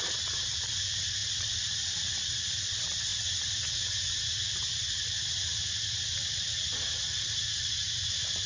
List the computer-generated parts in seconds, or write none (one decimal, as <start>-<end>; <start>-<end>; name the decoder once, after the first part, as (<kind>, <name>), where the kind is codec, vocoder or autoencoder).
none